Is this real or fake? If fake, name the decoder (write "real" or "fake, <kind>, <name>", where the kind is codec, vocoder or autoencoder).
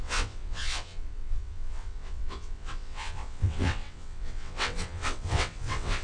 fake, vocoder, WaveNeXt